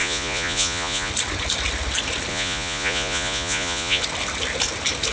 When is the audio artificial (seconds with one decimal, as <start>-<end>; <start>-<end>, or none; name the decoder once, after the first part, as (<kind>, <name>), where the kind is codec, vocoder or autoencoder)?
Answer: 0.0-1.1 (vocoder, Vocos); 2.3-4.0